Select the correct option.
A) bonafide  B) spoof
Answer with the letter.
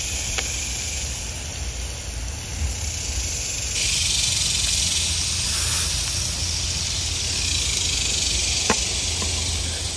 A